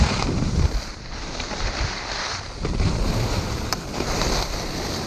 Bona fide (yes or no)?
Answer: yes